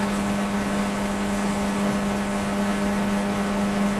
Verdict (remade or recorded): remade